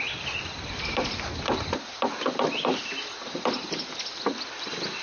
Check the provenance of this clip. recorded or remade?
recorded